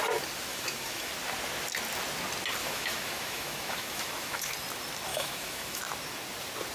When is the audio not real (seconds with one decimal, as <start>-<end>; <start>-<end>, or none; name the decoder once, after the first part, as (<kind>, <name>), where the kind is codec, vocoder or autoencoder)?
0.5-1.1 (autoencoder, DAC-VAE); 2.6-4.5; 5.1-5.8